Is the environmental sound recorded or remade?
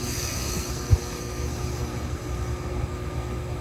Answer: remade